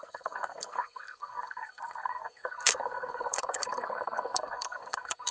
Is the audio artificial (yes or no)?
yes